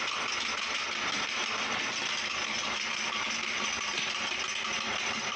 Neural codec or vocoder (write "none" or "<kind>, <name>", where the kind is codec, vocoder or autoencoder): none